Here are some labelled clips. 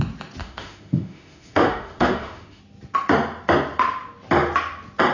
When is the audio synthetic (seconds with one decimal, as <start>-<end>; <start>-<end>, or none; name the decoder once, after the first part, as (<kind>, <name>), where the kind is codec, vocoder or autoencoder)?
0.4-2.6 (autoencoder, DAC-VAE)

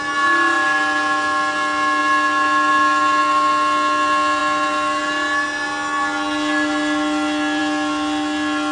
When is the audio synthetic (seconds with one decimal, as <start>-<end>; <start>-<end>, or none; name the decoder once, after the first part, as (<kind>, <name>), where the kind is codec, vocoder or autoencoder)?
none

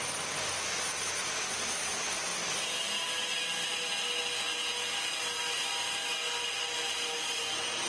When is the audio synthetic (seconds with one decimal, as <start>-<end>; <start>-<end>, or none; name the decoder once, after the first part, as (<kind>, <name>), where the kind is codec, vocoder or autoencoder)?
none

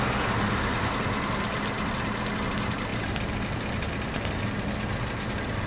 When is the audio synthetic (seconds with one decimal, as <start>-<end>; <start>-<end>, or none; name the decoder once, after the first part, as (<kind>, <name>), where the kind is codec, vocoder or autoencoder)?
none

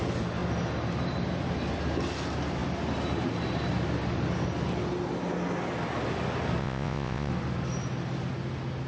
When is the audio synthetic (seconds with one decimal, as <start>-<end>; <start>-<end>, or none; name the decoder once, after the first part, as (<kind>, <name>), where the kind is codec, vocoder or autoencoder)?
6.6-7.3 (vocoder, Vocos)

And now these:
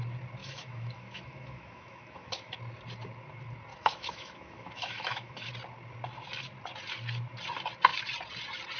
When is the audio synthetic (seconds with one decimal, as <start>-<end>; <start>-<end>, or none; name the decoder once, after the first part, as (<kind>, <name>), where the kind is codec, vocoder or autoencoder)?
0.4-2.5 (autoencoder, DAC-VAE); 3.7-5.5

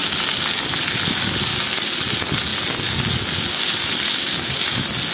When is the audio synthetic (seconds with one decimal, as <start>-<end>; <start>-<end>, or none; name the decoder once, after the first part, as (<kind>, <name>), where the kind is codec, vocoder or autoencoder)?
none

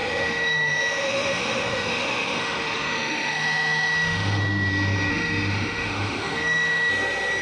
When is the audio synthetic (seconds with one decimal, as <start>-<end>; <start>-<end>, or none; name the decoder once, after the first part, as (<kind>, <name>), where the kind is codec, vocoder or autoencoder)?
0.0-4.4 (autoencoder, DAC-VAE); 5.1-6.9